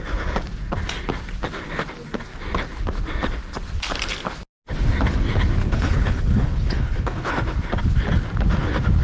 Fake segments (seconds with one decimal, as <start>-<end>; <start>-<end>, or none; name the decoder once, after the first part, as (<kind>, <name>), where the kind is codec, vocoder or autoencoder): 5.6-7.3 (codec, HILCodec)